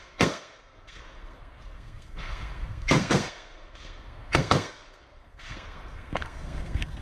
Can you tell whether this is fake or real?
fake